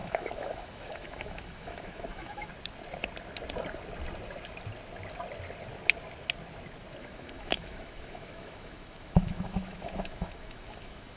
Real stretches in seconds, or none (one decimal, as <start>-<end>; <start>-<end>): 2.5-7.0